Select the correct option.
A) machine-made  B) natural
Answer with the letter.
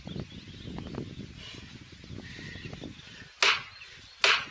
B